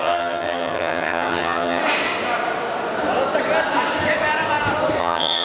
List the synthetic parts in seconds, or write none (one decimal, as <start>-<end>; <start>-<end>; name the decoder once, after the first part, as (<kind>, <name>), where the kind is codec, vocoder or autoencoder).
0.0-1.8 (vocoder, HiFi-GAN); 5.0-5.4